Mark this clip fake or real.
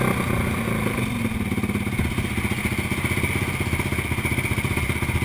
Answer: real